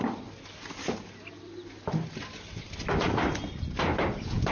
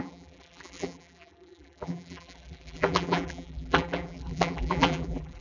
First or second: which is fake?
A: second